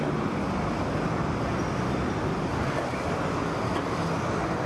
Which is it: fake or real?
real